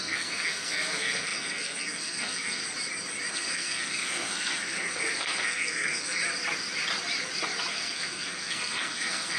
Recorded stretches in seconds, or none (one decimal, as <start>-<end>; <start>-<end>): 2.6-3.3; 6.2-7.7